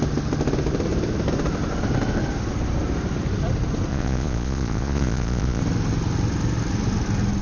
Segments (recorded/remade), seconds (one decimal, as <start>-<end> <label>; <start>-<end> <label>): 0.0-3.9 recorded; 3.9-5.6 remade; 5.6-7.4 recorded